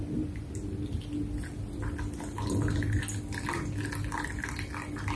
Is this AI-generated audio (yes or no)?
no